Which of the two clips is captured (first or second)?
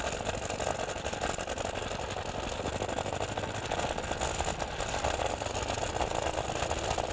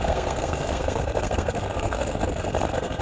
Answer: first